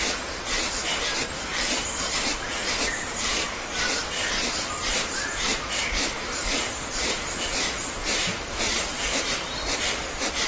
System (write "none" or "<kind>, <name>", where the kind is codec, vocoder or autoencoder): vocoder, BigVGAN v2